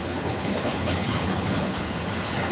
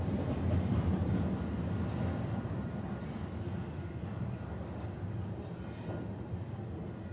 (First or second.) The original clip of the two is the second